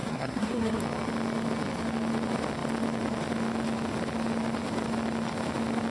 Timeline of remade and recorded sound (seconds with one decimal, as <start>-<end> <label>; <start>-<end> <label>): 0.0-0.8 remade; 0.8-5.9 recorded